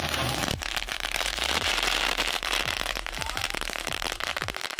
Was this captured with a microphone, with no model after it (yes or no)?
no